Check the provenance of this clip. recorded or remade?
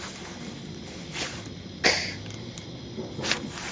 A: recorded